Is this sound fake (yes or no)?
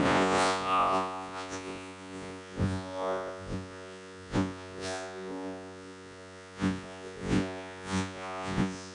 yes